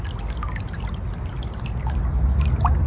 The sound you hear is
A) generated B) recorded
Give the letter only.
B